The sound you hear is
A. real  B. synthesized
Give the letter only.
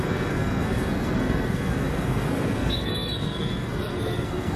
B